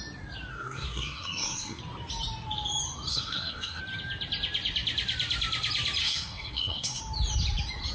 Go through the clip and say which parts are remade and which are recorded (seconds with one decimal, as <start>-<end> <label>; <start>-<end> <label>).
0.0-0.5 recorded; 0.5-1.8 remade; 1.8-3.1 recorded; 3.1-3.8 remade; 3.8-6.0 recorded; 6.0-7.0 remade; 7.0-7.9 recorded